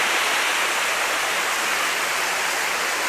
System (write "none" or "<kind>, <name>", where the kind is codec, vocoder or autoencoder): none